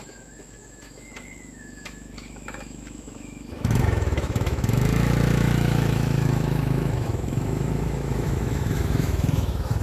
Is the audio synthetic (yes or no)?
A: yes